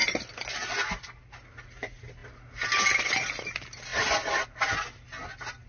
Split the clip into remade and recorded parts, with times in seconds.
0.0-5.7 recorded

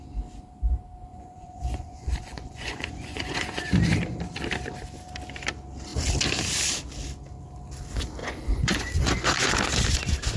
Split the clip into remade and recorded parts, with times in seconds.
0.0-1.1 recorded; 1.1-3.7 remade; 3.7-8.2 recorded; 8.2-9.5 remade; 9.5-10.4 recorded

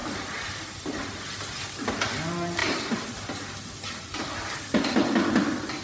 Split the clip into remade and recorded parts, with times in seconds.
0.0-5.8 recorded

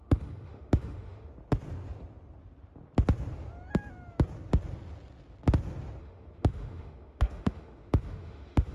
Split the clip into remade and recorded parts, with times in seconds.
0.0-1.3 remade; 1.3-6.0 recorded; 6.0-8.7 remade

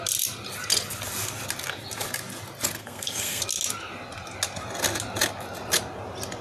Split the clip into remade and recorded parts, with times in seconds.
0.0-2.8 recorded; 2.8-3.4 remade; 3.4-6.4 recorded